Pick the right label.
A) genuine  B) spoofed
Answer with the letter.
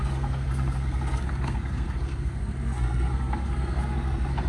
B